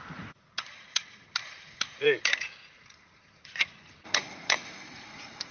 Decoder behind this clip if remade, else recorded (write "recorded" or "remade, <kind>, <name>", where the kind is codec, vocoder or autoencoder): remade, vocoder, Vocos